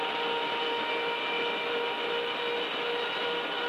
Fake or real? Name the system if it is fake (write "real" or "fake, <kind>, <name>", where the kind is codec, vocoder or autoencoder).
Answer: real